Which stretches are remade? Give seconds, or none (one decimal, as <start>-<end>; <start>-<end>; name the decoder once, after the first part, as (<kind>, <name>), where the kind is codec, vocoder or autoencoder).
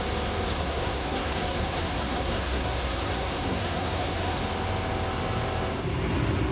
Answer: 0.5-4.4 (codec, SNAC)